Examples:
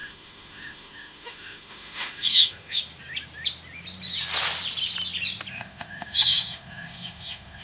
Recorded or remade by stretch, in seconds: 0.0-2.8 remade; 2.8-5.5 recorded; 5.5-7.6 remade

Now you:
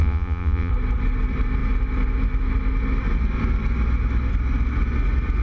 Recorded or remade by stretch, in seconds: 0.0-0.7 remade; 0.7-5.4 recorded

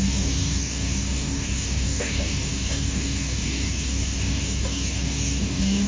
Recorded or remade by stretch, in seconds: 0.0-5.9 remade

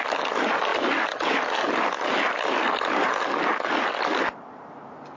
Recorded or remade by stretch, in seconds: 0.0-5.2 recorded